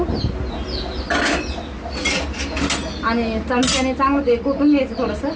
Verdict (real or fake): real